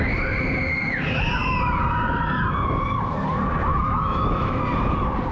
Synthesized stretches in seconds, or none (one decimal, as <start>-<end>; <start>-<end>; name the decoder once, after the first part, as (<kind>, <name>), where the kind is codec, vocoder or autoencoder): 3.7-4.6 (autoencoder, DAC-VAE)